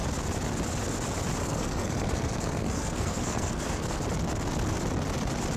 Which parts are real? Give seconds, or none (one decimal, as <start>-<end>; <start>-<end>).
0.0-1.4; 4.0-5.6